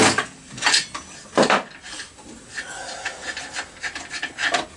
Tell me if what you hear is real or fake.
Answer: real